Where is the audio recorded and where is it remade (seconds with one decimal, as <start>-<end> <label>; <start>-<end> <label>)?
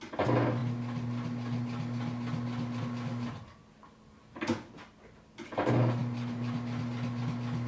0.0-7.7 recorded